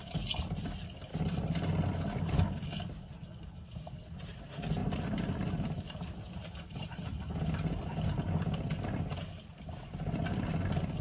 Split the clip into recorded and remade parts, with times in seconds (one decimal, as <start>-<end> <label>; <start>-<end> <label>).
0.0-1.1 recorded; 1.1-1.6 remade; 1.6-4.8 recorded; 4.8-7.0 remade; 7.0-11.0 recorded